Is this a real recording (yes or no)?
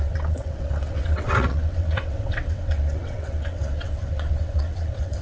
no